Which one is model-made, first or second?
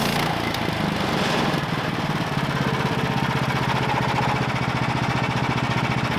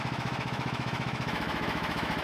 second